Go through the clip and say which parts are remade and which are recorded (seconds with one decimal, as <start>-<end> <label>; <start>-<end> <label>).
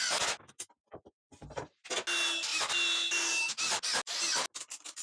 0.0-5.0 recorded